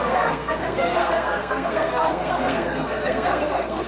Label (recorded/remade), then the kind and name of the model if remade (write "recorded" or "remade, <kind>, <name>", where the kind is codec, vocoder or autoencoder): remade, codec, SNAC